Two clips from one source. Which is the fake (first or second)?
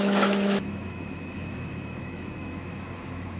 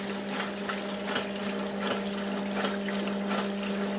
first